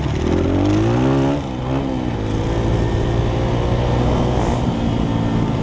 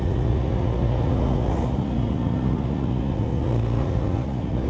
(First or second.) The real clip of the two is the first